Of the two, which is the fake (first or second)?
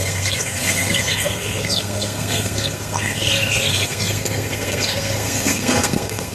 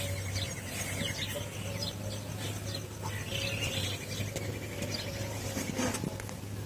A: first